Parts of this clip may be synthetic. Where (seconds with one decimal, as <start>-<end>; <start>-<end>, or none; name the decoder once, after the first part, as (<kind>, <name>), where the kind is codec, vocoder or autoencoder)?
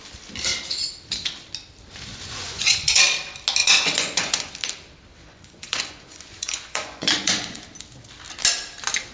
2.1-3.0 (vocoder, Vocos); 3.6-4.5; 5.2-7.6